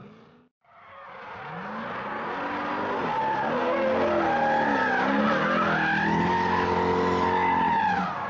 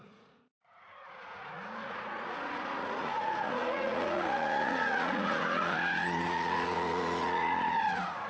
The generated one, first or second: second